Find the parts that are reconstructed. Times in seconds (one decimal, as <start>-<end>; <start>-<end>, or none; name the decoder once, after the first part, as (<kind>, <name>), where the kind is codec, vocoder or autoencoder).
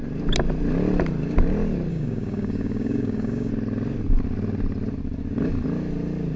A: 1.9-3.5 (codec, DAC)